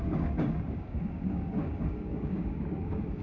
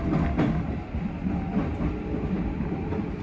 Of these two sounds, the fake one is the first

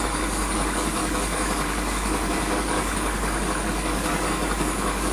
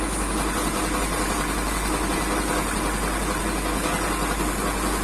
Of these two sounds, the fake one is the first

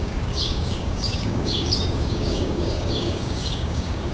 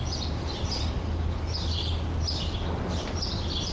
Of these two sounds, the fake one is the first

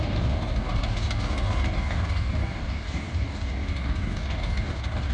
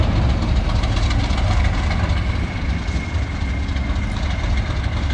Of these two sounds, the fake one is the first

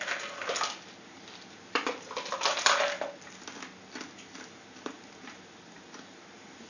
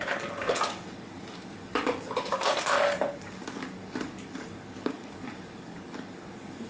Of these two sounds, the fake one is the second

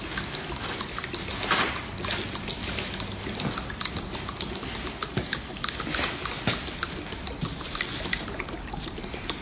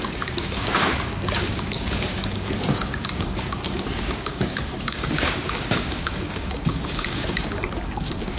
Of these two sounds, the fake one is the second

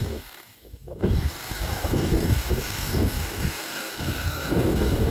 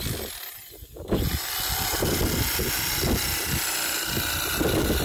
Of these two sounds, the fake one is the first